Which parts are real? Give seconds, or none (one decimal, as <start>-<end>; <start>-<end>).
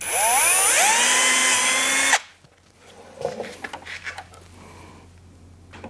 0.0-5.9